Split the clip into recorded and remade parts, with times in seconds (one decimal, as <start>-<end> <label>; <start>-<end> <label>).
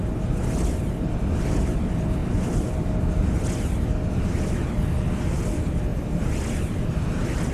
0.0-7.5 recorded